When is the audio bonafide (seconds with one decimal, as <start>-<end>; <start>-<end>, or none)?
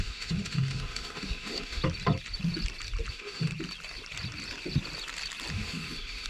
1.8-3.1; 3.5-5.5